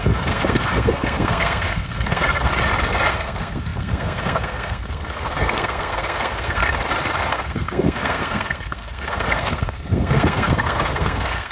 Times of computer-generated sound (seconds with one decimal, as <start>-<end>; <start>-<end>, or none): 0.0-2.5; 3.1-6.6; 7.3-11.5